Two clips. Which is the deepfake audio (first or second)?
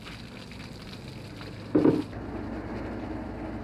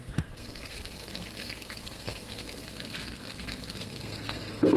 second